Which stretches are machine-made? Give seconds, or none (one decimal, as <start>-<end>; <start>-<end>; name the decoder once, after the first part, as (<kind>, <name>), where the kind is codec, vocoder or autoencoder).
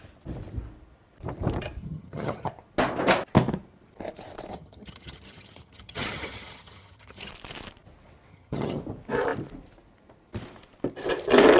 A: 1.8-2.5 (vocoder, HiFi-GAN); 4.5-7.3; 8.3-8.8